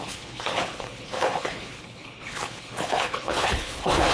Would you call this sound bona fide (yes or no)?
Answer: no